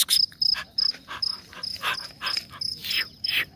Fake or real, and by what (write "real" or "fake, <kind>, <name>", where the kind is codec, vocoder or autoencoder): real